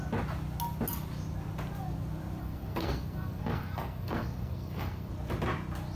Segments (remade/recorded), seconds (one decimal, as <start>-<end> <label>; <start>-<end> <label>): 0.0-2.4 recorded; 2.4-5.1 remade; 5.1-5.9 recorded